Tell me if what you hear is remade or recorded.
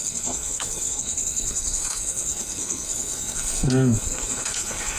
remade